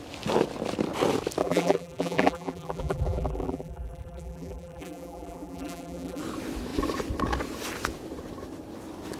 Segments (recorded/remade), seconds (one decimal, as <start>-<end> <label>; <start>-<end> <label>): 0.0-1.4 recorded; 1.4-6.2 remade; 6.2-9.2 recorded